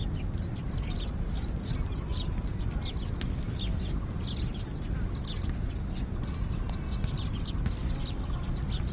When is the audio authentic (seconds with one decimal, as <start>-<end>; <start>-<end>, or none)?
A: 0.0-8.9